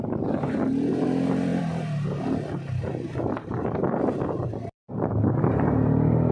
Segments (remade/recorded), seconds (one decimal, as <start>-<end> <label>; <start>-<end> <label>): 0.0-6.3 remade